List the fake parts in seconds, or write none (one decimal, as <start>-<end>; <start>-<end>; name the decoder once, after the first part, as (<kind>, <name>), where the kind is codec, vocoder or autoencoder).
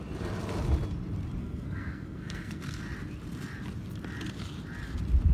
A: 1.4-2.8 (codec, SNAC)